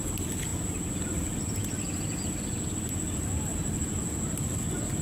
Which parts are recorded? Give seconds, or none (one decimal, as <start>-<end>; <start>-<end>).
0.0-5.0